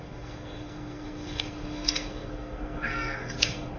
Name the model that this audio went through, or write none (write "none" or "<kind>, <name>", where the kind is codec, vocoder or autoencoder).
codec, SNAC